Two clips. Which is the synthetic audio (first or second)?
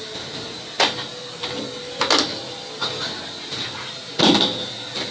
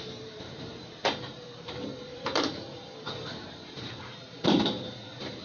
second